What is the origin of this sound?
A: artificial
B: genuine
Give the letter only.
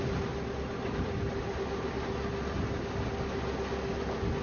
B